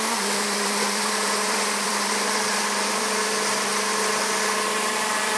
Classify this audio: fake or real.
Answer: fake